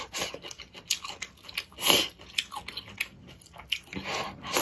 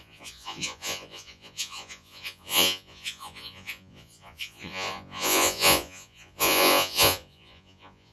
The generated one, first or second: second